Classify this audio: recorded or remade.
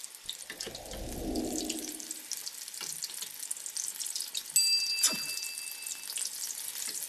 recorded